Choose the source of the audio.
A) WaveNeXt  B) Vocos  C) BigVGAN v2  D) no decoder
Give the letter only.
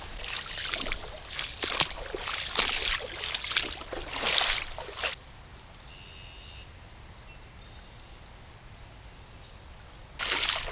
D